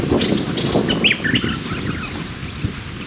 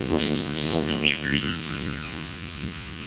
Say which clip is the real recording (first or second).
first